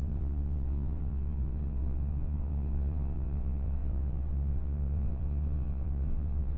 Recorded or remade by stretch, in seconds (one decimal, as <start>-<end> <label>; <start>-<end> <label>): 0.0-6.6 remade